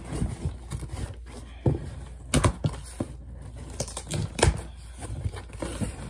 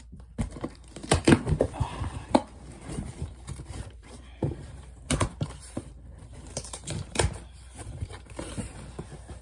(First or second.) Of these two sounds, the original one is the first